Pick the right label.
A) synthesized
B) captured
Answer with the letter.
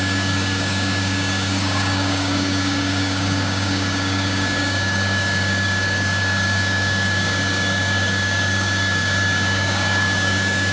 A